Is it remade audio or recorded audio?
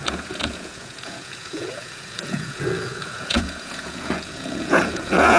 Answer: remade